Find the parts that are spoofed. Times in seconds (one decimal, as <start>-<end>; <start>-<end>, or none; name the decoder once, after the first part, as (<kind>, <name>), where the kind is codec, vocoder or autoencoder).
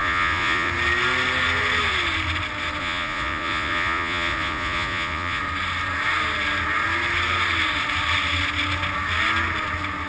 0.0-0.7 (vocoder, Vocos); 2.8-5.4